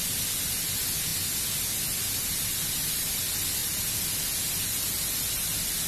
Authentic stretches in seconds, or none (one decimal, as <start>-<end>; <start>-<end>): 0.0-5.9

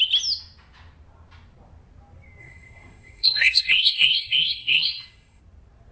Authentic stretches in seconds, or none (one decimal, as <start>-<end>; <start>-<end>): 0.0-2.4; 5.4-5.9

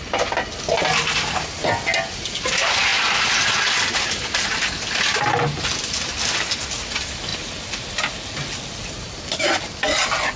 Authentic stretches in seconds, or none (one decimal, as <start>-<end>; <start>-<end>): 0.0-10.4